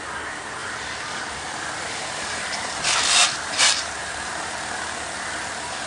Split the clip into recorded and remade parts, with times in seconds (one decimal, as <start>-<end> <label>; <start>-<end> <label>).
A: 0.0-0.6 recorded; 0.6-3.9 remade; 3.9-5.9 recorded